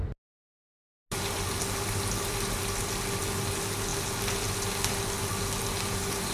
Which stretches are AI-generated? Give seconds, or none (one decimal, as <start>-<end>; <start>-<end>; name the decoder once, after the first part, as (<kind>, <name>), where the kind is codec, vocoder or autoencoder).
none